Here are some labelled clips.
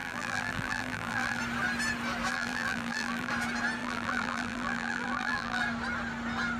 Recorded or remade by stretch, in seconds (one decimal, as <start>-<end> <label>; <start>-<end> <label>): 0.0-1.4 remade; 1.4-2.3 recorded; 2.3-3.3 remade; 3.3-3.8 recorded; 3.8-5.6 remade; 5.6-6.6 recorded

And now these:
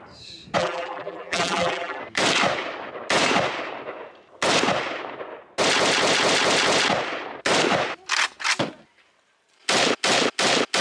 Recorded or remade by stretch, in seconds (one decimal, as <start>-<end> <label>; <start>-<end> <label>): 0.0-0.6 recorded; 0.6-2.0 remade; 2.0-10.8 recorded

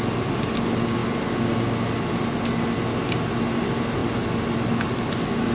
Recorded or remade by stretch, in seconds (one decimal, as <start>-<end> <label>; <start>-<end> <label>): 0.0-5.5 recorded

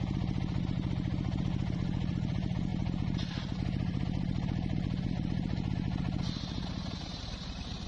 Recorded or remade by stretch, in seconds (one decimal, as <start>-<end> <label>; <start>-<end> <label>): 0.0-7.9 recorded

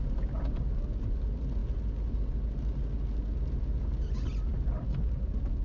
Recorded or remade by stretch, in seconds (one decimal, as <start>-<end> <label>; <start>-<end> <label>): 0.0-5.6 recorded

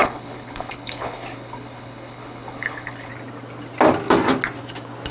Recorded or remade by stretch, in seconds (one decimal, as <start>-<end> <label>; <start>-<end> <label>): 0.0-3.1 remade; 3.1-5.1 recorded